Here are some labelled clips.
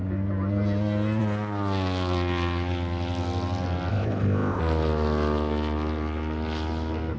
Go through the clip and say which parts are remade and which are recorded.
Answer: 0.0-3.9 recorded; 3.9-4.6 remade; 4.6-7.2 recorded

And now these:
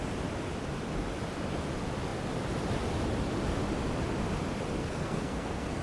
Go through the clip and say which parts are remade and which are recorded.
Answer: 0.0-4.8 recorded; 4.8-5.8 remade

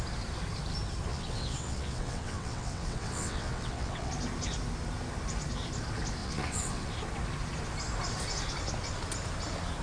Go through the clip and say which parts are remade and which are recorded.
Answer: 0.0-1.1 recorded; 1.1-4.1 remade; 4.1-6.2 recorded; 6.2-6.9 remade; 6.9-9.8 recorded

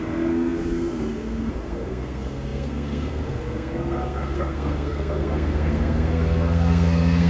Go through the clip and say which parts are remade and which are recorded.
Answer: 0.0-7.3 remade

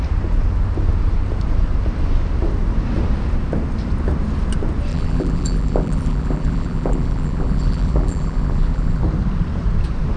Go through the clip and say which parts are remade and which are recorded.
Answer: 0.0-4.9 recorded; 4.9-9.0 remade; 9.0-10.2 recorded

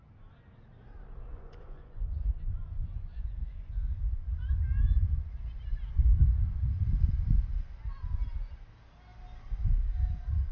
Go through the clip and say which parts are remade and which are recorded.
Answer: 0.0-1.3 recorded; 1.3-4.6 remade; 4.6-10.5 recorded